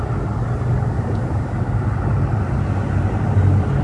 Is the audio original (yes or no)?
yes